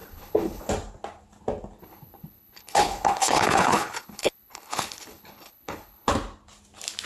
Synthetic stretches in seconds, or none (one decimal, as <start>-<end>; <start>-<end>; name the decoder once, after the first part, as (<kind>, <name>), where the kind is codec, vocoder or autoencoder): 0.0-0.7 (codec, HILCodec); 1.8-6.1